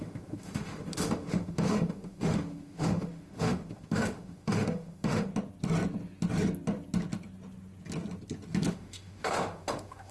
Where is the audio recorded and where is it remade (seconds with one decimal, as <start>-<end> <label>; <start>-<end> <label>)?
0.0-5.3 remade; 5.3-8.7 recorded; 8.7-10.1 remade